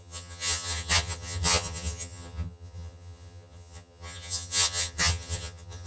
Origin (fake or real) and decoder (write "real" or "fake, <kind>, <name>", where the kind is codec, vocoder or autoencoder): fake, vocoder, HiFi-GAN